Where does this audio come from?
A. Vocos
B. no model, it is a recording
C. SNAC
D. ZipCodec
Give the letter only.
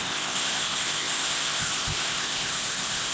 D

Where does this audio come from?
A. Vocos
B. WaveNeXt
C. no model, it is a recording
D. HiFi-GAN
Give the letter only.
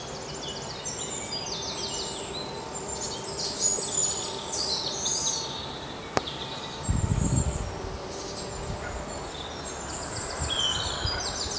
C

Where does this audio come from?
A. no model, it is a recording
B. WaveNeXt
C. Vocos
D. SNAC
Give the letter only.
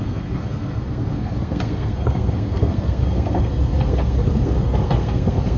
D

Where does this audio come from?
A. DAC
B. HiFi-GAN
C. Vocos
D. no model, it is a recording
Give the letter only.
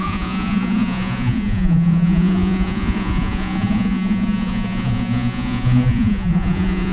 C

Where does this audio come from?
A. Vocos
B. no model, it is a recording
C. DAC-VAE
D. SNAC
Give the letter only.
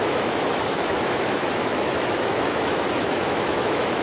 C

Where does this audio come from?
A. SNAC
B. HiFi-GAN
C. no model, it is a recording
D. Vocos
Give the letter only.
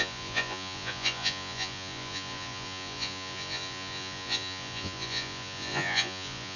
D